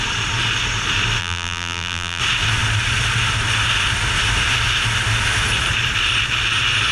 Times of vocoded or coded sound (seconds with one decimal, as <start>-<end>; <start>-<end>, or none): 1.2-2.2

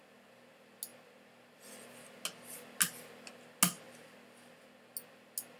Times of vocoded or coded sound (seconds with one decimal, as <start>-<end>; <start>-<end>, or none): none

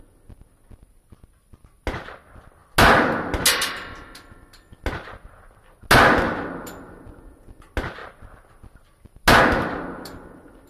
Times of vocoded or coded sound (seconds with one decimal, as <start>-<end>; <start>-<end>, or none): none

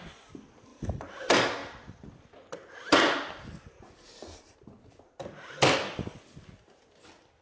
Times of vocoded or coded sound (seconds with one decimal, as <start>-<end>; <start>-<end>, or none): none

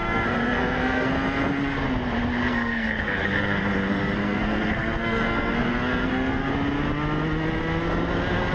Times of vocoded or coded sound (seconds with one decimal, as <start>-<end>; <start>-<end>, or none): 0.0-1.1; 2.4-6.5